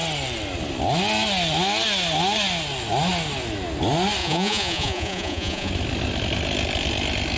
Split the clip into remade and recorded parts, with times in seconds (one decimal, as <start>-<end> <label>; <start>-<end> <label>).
0.0-4.2 recorded; 4.2-5.7 remade; 5.7-7.4 recorded